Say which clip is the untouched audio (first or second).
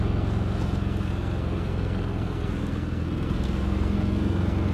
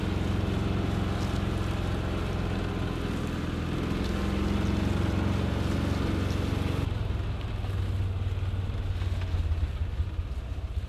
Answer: second